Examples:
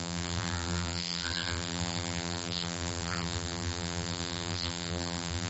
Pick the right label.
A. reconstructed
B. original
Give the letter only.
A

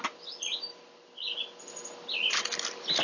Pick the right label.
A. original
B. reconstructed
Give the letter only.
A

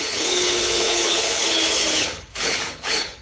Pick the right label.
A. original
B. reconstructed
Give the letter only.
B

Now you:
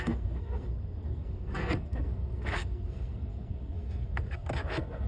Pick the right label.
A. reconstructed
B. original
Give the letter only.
A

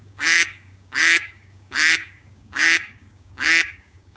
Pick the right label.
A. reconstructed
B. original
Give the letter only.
A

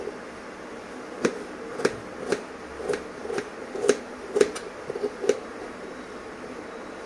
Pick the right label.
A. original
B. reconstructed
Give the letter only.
A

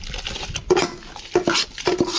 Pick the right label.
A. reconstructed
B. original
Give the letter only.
B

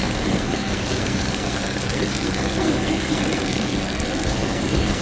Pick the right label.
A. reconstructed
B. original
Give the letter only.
A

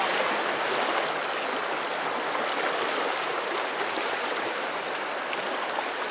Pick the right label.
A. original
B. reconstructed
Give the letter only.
A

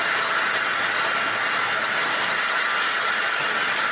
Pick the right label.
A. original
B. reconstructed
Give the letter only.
A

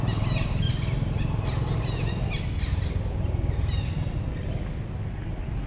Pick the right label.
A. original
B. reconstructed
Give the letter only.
A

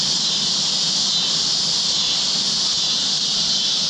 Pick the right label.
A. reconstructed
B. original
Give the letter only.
B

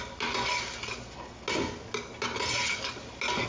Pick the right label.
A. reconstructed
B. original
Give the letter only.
B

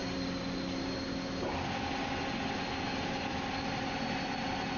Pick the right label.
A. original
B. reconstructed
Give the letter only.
A